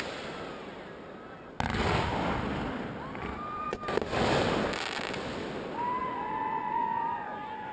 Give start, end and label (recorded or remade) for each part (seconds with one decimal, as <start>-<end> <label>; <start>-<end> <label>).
0.0-3.2 recorded; 3.2-3.8 remade; 3.8-6.0 recorded; 6.0-7.7 remade